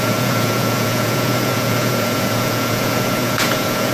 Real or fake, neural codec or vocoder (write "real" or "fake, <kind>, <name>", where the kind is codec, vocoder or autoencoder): fake, vocoder, Vocos